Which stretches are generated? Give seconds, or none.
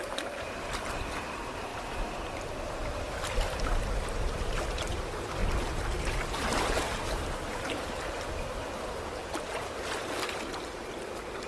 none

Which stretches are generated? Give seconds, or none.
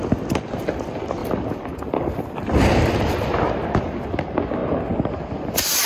1.2-3.5 (vocoder, BigVGAN v2)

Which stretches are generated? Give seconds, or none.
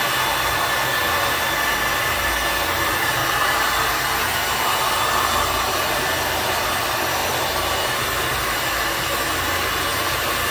none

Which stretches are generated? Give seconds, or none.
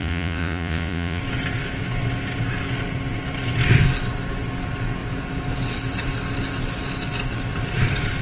0.0-1.2 (vocoder, Vocos)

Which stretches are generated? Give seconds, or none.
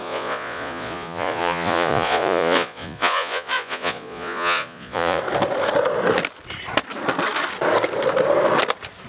0.0-5.2 (vocoder, Vocos)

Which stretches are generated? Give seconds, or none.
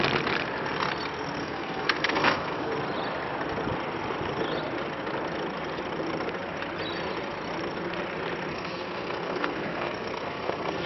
1.4-2.7 (codec, SNAC); 8.5-10.9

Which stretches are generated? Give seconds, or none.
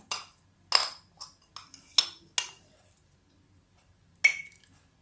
none